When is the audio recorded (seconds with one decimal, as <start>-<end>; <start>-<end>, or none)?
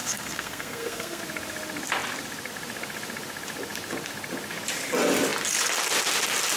1.2-6.6